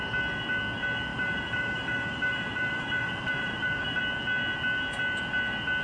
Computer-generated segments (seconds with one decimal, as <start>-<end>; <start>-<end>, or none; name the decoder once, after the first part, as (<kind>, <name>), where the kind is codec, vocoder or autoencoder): 1.1-4.0 (vocoder, BigVGAN v2)